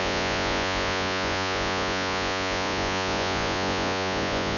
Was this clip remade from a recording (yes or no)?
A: yes